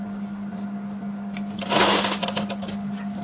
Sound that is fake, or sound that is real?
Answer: real